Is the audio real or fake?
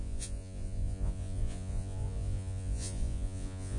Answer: fake